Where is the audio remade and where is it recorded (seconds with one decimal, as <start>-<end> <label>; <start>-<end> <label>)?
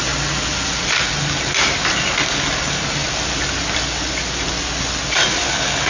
0.0-5.9 recorded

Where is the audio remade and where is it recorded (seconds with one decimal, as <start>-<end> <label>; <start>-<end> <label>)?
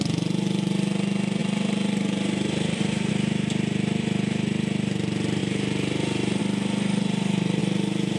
0.0-1.4 recorded; 1.4-3.1 remade; 3.1-5.4 recorded; 5.4-6.4 remade; 6.4-7.6 recorded; 7.6-8.2 remade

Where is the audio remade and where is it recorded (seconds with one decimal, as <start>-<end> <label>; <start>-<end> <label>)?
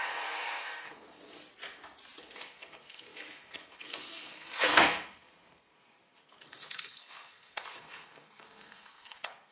0.0-1.2 remade; 1.2-2.2 recorded; 2.2-9.5 remade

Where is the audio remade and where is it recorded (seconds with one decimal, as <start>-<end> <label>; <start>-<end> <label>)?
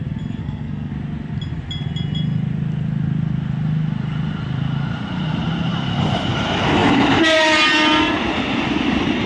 0.0-0.4 recorded; 0.4-0.9 remade; 0.9-9.3 recorded